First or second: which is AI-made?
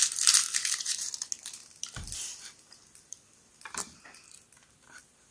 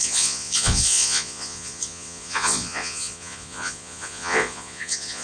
second